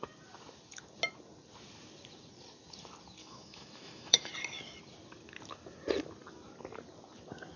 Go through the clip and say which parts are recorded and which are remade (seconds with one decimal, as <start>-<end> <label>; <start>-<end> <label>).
0.0-3.2 recorded; 3.2-4.3 remade; 4.3-7.6 recorded